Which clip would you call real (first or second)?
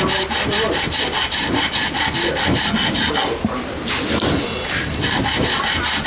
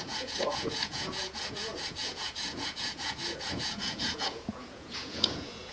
first